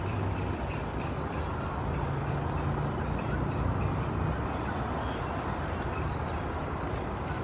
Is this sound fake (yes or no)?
no